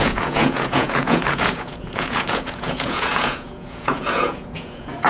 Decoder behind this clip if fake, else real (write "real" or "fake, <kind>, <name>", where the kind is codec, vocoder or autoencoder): fake, vocoder, Vocos